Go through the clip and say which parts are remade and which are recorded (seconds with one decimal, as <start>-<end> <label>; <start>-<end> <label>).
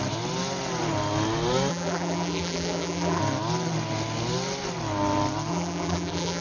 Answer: 0.0-1.7 recorded; 1.7-3.2 remade; 3.2-5.5 recorded; 5.5-6.4 remade